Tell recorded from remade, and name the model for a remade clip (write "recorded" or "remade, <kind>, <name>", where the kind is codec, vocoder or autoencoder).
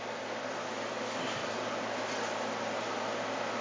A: recorded